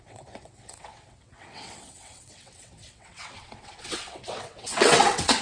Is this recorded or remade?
remade